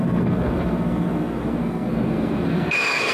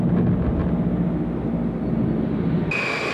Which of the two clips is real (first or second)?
second